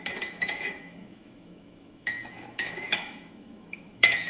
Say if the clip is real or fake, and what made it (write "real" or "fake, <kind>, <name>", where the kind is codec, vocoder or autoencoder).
fake, autoencoder, DAC-VAE